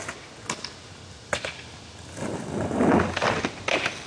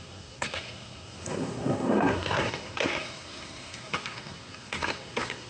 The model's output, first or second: second